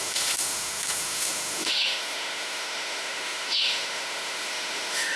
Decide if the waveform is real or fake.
fake